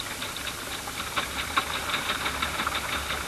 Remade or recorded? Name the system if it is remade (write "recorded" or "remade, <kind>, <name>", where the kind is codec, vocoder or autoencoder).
recorded